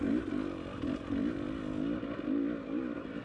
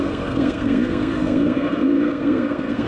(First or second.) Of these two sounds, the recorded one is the first